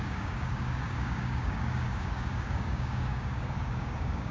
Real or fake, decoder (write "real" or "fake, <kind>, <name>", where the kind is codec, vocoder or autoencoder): fake, codec, DAC